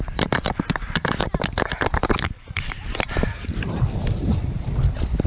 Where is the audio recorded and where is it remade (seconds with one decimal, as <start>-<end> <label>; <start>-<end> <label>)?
0.0-1.2 recorded; 1.2-3.8 remade; 3.8-5.3 recorded